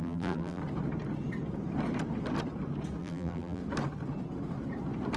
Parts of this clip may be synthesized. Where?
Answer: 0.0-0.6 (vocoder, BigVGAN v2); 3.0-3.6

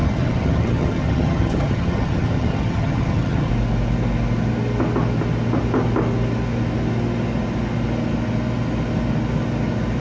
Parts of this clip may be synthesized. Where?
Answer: 0.0-3.5 (vocoder, HiFi-GAN)